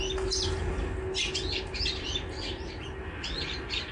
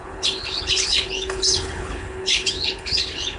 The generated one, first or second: second